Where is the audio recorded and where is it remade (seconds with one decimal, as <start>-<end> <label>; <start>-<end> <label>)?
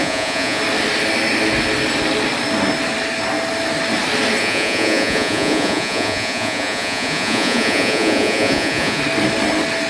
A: 0.0-0.6 remade; 0.6-4.4 recorded; 4.4-9.0 remade; 9.0-9.9 recorded